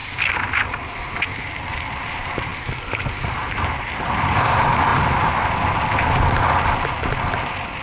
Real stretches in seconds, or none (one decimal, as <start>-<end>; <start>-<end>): 0.0-0.7; 2.5-3.1; 4.9-7.3